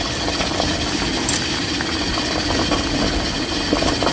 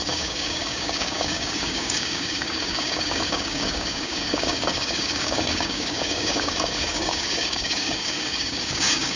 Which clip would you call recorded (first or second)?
first